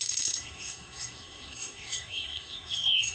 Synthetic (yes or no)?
yes